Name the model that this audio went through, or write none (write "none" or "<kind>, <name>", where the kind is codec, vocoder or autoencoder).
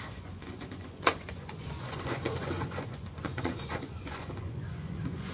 vocoder, Vocos